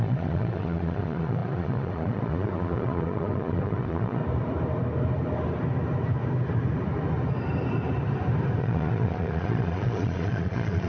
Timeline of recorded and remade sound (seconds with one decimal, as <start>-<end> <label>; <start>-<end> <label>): 0.0-4.2 remade; 4.2-8.6 recorded; 8.6-10.9 remade